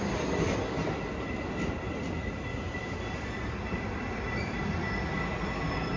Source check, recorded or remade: recorded